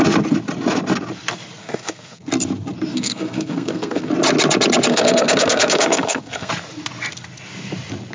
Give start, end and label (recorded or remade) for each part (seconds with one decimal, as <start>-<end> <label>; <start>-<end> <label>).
0.0-1.6 recorded; 1.6-2.3 remade; 2.3-2.9 recorded; 2.9-4.1 remade; 4.1-4.9 recorded; 4.9-6.5 remade; 6.5-8.1 recorded